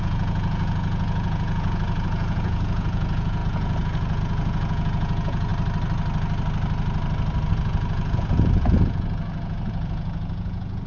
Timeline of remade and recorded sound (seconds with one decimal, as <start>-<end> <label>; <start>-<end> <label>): 0.0-5.5 remade; 5.5-7.5 recorded; 7.5-10.9 remade